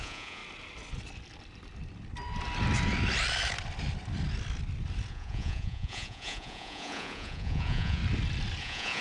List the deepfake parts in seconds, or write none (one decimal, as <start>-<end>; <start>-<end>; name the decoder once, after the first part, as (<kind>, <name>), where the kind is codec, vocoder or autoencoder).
0.0-0.4 (vocoder, Vocos); 5.1-8.0; 8.6-9.0